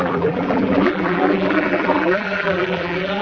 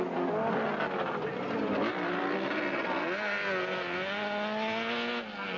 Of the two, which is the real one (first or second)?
second